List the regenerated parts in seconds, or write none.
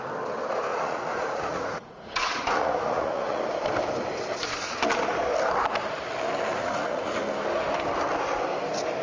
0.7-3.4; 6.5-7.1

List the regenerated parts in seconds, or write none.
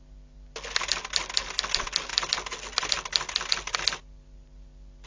none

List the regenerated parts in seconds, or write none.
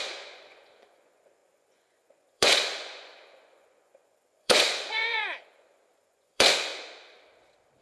0.0-6.7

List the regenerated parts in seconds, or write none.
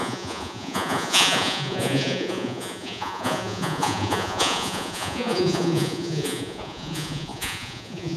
0.0-8.2